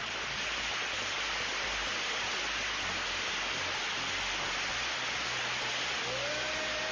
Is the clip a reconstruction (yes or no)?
no